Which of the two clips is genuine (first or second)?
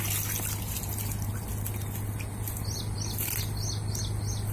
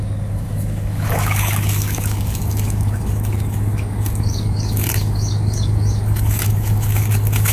first